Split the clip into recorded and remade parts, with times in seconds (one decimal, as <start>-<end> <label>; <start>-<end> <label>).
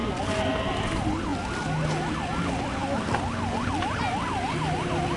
0.0-5.2 recorded